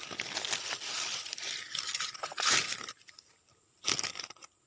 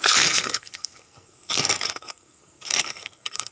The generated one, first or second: second